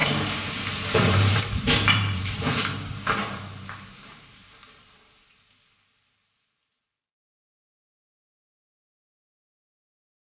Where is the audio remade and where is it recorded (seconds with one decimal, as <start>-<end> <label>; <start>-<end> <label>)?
0.0-5.0 remade; 5.0-10.3 recorded